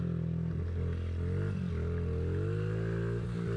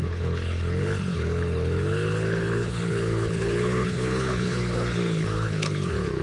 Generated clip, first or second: second